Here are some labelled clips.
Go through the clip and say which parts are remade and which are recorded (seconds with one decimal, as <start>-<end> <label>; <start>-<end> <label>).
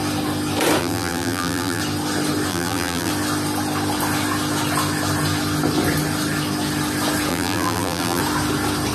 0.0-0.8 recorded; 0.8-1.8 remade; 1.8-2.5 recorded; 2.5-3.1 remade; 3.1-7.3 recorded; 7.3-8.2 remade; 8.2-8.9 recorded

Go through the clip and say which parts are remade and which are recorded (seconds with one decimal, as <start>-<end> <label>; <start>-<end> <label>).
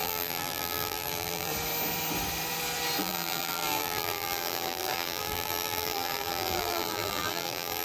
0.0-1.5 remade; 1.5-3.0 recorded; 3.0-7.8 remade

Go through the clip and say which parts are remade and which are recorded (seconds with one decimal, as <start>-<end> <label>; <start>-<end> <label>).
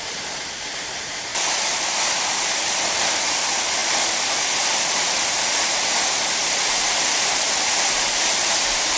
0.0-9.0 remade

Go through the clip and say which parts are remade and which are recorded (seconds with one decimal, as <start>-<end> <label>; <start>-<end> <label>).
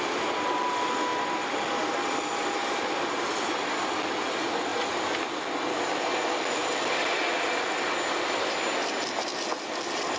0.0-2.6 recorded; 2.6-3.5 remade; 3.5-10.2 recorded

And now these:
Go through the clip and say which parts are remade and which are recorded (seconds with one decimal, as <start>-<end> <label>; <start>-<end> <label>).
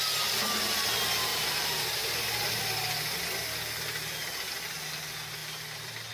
0.0-1.3 recorded; 1.3-2.6 remade; 2.6-5.4 recorded; 5.4-6.1 remade